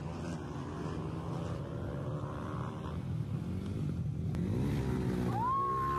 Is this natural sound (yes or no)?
yes